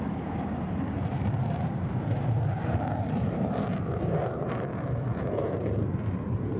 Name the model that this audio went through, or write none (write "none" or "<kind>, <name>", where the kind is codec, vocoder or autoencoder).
vocoder, BigVGAN v2